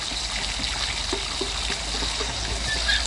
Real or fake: real